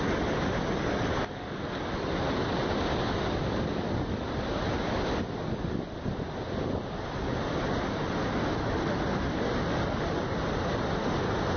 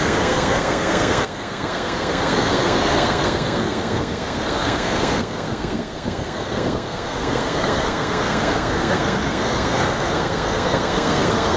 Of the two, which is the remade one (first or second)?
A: second